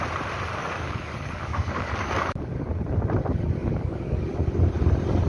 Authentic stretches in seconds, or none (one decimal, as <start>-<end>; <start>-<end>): 0.0-0.6; 2.7-3.6; 4.3-5.3